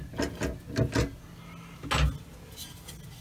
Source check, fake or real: real